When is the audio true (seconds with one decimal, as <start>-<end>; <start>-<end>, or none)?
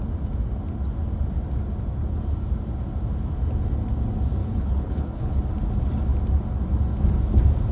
0.0-4.4; 5.4-7.7